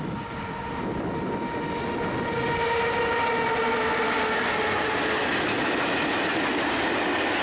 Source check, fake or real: real